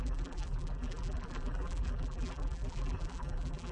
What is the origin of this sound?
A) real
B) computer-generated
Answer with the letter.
B